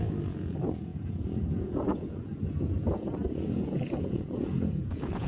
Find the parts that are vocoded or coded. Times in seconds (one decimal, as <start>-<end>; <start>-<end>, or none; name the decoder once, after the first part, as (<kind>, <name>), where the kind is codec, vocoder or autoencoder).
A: 0.0-5.3 (vocoder, Vocos)